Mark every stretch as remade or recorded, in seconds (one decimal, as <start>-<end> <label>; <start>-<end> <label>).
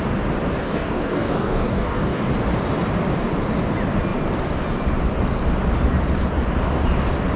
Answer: 0.0-0.6 recorded; 0.6-2.2 remade; 2.2-7.4 recorded